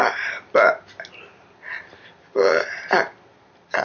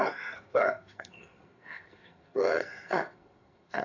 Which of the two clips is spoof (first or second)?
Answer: second